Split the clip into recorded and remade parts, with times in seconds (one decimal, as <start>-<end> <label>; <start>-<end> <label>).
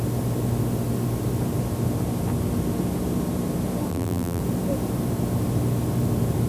0.0-3.9 recorded; 3.9-4.4 remade; 4.4-6.5 recorded